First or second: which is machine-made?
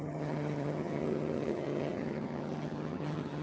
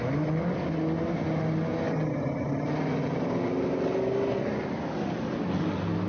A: first